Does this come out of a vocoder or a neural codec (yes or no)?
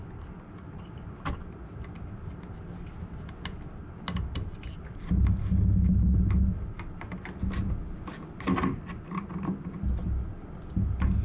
no